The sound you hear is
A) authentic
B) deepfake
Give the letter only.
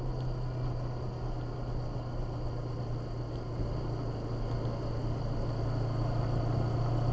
A